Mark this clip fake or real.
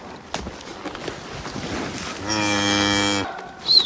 real